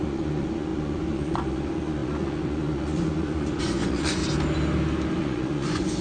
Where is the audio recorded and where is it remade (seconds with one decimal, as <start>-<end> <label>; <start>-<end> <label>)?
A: 0.0-4.2 remade; 4.2-5.2 recorded; 5.2-6.0 remade